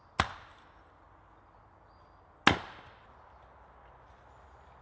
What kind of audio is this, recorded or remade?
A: recorded